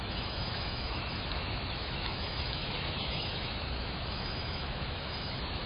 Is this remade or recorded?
remade